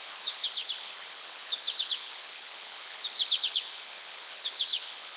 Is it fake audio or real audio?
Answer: fake